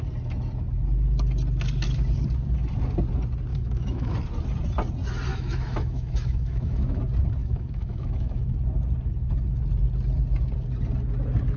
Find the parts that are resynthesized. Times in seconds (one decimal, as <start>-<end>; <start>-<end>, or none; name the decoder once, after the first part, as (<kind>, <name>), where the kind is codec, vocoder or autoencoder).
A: 3.5-4.1 (autoencoder, DAC-VAE); 5.3-7.0; 7.4-8.4